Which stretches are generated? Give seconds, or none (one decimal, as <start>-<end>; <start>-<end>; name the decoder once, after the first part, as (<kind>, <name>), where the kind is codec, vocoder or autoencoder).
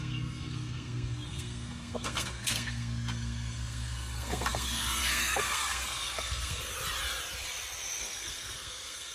0.0-6.7 (codec, SNAC); 8.0-9.1